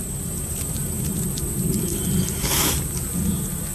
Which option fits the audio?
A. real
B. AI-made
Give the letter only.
A